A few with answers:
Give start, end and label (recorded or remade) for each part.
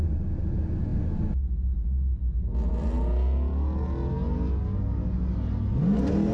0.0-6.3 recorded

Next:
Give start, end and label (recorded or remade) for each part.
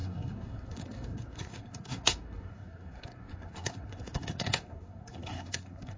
0.0-6.0 remade